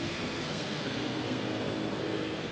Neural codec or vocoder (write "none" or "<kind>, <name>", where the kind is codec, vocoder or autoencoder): codec, SNAC